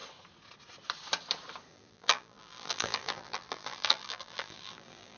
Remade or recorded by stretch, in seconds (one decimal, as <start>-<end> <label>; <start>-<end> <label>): 0.0-1.7 recorded; 1.7-5.2 remade